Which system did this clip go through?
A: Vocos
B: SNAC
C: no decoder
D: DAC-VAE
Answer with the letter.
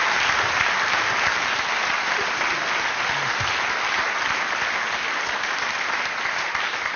C